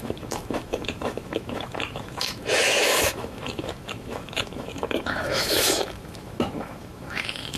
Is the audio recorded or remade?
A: remade